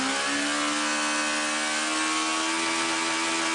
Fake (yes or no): no